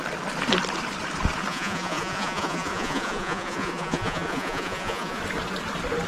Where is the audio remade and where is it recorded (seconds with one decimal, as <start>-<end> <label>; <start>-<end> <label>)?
0.0-1.5 recorded; 1.5-5.2 remade; 5.2-6.1 recorded